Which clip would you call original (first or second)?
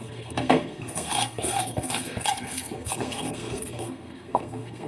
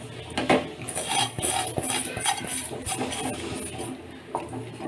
second